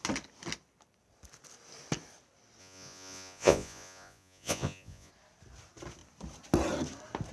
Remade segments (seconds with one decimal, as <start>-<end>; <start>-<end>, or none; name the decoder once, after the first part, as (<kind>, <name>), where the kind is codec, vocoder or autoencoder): 2.6-5.1 (vocoder, Vocos)